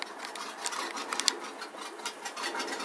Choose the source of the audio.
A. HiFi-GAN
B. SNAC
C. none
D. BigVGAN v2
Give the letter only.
C